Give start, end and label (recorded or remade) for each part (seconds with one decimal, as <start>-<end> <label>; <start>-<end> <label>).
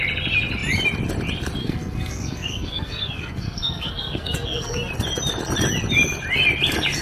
0.0-1.6 recorded; 1.6-4.9 remade; 4.9-7.0 recorded